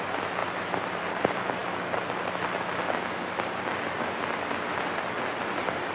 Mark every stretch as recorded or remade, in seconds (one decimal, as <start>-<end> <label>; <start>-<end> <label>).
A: 0.0-5.9 recorded